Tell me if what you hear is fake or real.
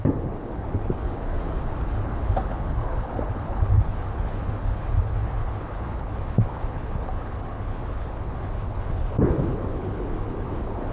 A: fake